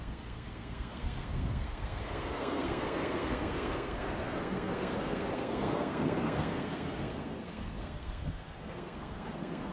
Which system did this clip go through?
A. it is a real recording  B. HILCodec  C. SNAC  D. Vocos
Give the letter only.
C